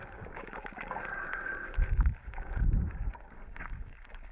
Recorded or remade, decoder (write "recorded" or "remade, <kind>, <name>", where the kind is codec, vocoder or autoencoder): remade, codec, DAC